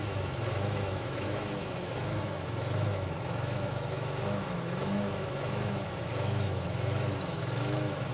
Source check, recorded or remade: remade